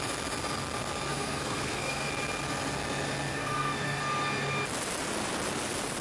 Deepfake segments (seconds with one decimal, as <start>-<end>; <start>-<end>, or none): 1.1-2.1; 3.3-4.0